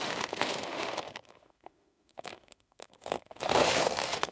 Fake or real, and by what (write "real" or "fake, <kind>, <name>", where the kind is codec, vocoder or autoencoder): fake, autoencoder, DAC-VAE